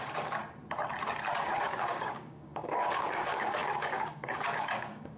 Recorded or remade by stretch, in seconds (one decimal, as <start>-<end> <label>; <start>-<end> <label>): 0.0-0.4 remade; 0.4-1.4 recorded; 1.4-5.2 remade